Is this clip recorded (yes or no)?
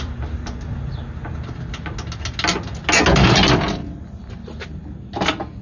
yes